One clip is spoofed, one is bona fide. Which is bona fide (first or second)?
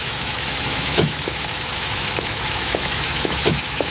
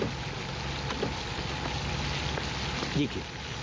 second